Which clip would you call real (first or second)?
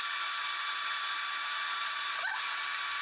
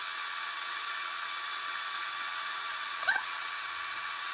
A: first